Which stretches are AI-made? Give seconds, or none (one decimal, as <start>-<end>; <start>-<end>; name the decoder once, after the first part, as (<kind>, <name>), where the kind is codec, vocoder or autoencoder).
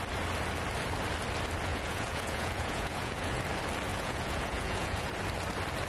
1.7-3.4 (vocoder, Vocos); 3.9-5.1